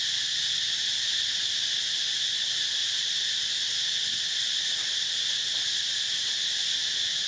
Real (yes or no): yes